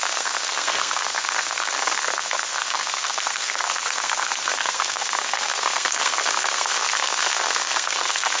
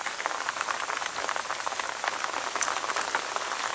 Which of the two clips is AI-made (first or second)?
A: first